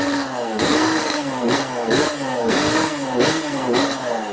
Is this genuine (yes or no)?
no